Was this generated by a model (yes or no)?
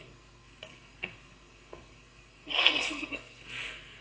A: yes